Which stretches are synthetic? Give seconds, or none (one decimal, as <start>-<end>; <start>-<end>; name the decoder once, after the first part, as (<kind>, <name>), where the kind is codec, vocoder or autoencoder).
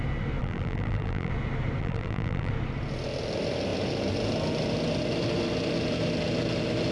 0.4-1.3 (vocoder, BigVGAN v2); 1.8-2.5